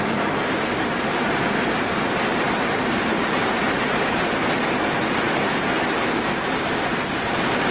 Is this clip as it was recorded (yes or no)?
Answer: no